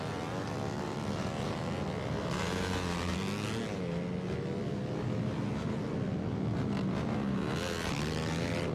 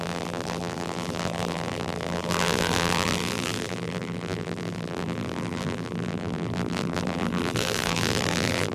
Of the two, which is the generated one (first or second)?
second